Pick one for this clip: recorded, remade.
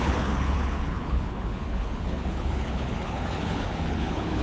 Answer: remade